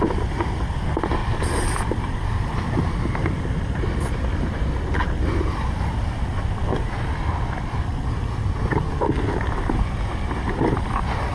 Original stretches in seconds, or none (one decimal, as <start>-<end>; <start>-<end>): 0.0-11.3